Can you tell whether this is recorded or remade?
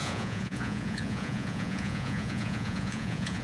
remade